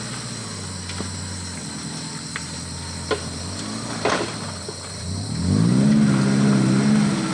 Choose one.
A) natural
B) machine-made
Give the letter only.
A